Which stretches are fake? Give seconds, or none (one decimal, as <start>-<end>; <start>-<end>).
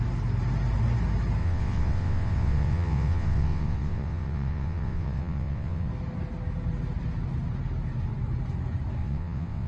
1.4-5.9; 9.0-9.7